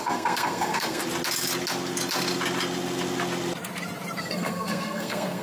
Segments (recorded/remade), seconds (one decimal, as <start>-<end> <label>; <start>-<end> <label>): 0.0-1.0 remade; 1.0-4.2 recorded; 4.2-5.4 remade

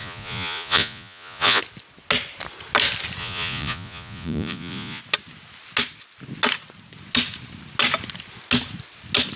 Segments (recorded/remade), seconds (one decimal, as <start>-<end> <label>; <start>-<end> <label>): 0.0-1.6 remade; 1.6-3.2 recorded; 3.2-5.0 remade; 5.0-9.4 recorded